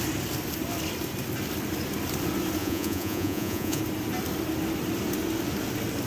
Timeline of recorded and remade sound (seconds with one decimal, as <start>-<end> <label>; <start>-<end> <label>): 0.0-2.6 recorded; 2.6-3.8 remade; 3.8-6.1 recorded